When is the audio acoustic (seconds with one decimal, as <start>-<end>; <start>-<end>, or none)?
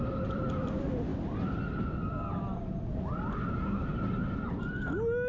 0.0-5.3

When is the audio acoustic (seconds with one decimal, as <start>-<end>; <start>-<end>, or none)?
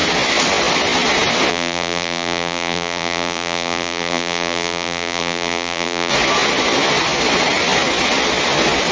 0.0-1.5; 6.1-8.9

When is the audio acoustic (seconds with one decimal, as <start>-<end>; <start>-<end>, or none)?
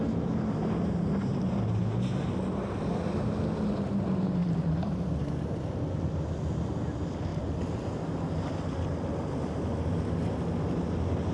0.0-1.2; 1.8-4.4; 5.4-7.3; 8.5-11.3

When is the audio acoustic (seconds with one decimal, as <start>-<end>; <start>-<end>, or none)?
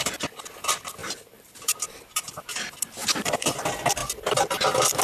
0.0-1.0; 2.4-3.0; 3.5-5.0